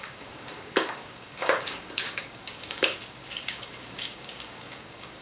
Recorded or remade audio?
remade